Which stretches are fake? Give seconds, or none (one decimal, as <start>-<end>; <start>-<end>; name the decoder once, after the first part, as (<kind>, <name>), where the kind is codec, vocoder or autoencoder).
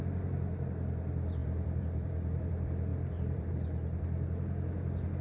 1.4-2.5 (vocoder, BigVGAN v2); 2.9-3.5